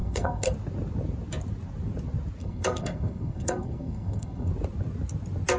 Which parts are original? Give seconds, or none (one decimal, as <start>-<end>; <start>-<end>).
0.5-2.4; 4.5-5.6